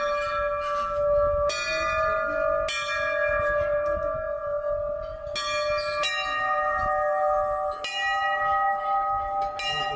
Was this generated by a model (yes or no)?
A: no